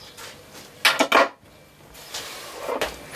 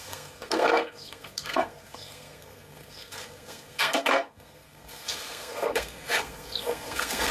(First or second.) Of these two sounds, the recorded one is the first